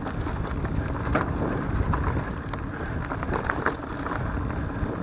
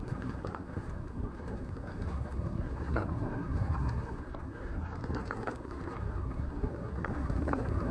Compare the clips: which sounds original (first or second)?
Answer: first